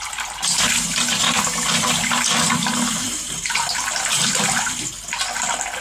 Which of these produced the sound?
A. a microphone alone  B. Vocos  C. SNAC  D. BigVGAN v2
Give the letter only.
A